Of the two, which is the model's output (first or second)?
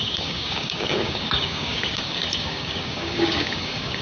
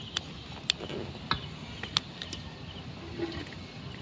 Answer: first